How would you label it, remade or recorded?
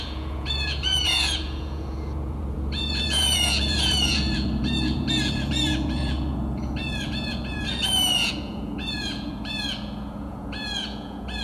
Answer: remade